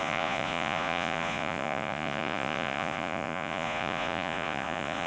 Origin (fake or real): fake